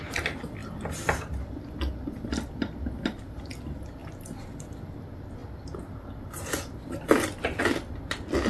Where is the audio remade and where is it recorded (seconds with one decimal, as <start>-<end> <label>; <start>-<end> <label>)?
0.0-8.5 recorded

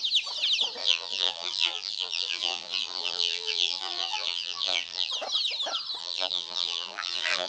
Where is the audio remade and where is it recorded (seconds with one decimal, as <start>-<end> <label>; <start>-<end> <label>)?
0.0-0.8 recorded; 0.8-5.1 remade; 5.1-6.0 recorded; 6.0-7.5 remade

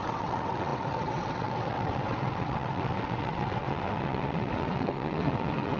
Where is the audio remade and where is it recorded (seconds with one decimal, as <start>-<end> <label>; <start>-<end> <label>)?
0.0-5.8 remade

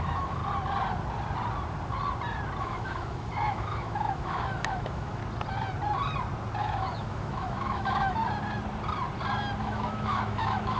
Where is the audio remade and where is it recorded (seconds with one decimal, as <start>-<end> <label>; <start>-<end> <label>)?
0.0-0.4 remade; 0.4-2.6 recorded; 2.6-5.2 remade; 5.2-6.6 recorded; 6.6-8.2 remade; 8.2-9.6 recorded; 9.6-10.8 remade

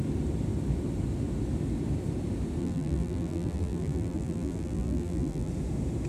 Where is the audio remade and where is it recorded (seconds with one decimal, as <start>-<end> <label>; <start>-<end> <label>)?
0.0-2.6 recorded; 2.6-5.5 remade; 5.5-6.1 recorded

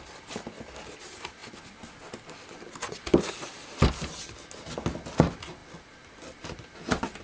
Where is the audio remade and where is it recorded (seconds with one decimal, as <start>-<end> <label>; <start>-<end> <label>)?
0.0-7.2 recorded